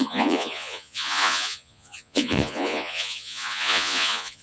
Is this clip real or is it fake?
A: fake